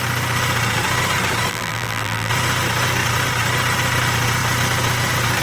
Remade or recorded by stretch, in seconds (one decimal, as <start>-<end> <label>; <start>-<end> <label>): 0.0-1.5 recorded; 1.5-2.3 remade; 2.3-5.4 recorded